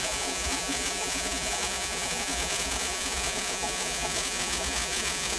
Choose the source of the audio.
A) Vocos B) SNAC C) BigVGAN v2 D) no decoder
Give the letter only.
A